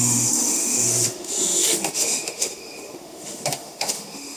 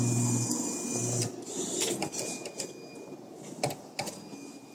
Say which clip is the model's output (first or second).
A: first